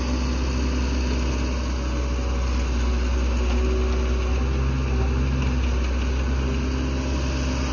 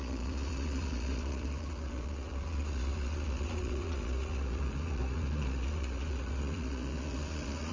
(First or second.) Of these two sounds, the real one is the first